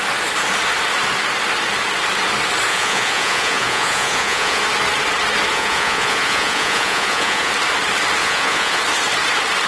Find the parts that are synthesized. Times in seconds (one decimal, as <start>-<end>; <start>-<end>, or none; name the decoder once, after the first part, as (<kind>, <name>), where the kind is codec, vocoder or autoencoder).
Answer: 2.7-4.6 (vocoder, Vocos); 5.5-7.5; 8.2-8.8